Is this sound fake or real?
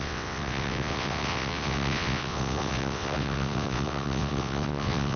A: fake